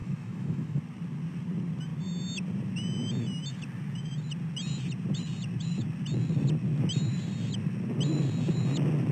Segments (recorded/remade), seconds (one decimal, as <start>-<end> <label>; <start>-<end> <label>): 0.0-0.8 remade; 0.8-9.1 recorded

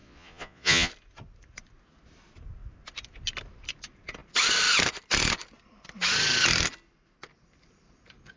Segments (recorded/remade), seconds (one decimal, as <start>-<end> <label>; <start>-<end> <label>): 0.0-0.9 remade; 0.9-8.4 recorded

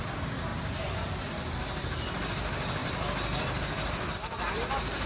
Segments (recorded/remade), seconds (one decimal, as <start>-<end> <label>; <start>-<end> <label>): 0.0-5.1 recorded

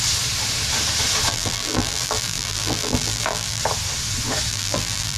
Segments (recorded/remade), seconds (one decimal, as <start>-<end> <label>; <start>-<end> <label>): 0.0-1.3 recorded; 1.3-3.6 remade; 3.6-4.5 recorded; 4.5-5.2 remade